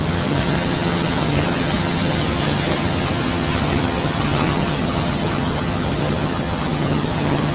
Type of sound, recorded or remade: remade